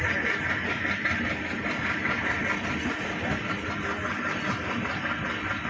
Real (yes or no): yes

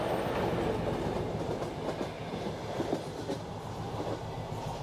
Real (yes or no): yes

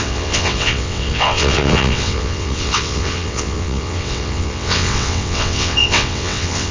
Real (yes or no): no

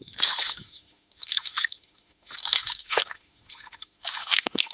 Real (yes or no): no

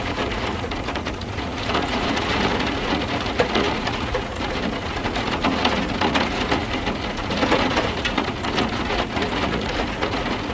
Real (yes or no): no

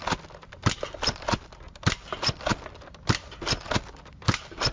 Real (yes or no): yes